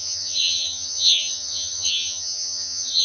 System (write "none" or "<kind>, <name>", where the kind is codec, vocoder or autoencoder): vocoder, HiFi-GAN